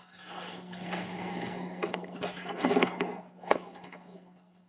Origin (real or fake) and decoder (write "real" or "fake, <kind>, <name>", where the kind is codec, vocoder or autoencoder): fake, codec, SNAC